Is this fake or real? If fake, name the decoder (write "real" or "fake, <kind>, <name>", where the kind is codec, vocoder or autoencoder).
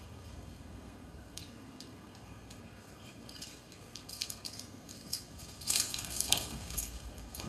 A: fake, codec, SNAC